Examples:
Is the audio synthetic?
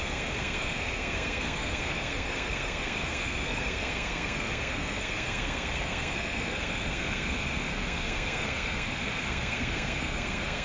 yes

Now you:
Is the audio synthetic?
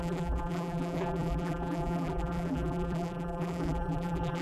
yes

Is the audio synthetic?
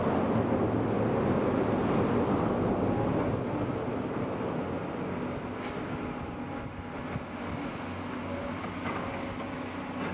no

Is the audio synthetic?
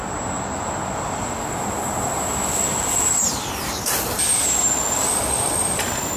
no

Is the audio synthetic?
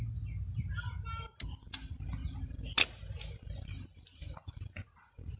no